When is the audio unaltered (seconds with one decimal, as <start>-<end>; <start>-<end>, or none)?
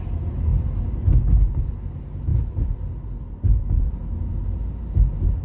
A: 0.0-5.4